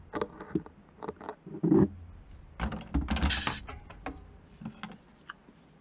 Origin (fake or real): real